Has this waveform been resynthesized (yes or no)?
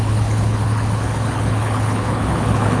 yes